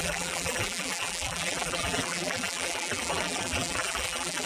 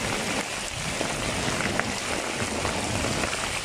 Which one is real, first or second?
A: second